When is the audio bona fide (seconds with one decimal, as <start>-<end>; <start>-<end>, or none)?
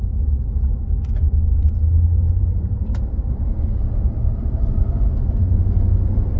0.0-2.2; 5.0-6.4